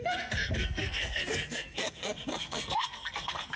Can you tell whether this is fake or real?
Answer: fake